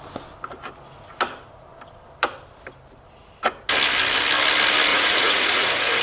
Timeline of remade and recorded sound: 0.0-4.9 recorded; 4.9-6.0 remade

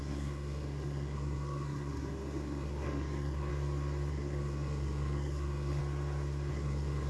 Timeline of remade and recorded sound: 0.0-3.5 remade; 3.5-4.1 recorded; 4.1-5.8 remade; 5.8-6.5 recorded; 6.5-7.1 remade